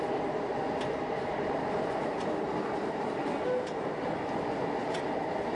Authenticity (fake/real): real